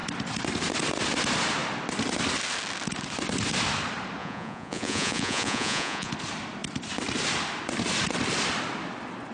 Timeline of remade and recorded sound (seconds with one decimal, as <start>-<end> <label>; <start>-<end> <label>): 0.0-4.2 recorded; 4.2-6.1 remade; 6.1-9.3 recorded